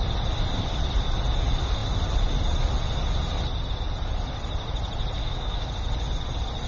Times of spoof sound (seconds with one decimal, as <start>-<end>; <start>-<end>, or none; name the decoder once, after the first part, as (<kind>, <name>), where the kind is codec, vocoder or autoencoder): 5.2-5.7 (autoencoder, DAC-VAE)